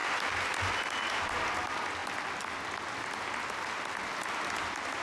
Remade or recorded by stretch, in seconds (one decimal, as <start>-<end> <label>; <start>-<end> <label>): 0.0-5.0 recorded